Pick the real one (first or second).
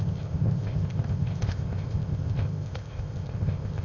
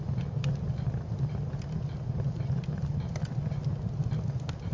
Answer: second